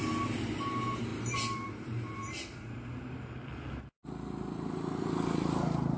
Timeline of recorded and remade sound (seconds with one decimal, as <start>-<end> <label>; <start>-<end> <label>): 0.0-1.1 recorded; 1.1-2.9 remade; 2.9-6.0 recorded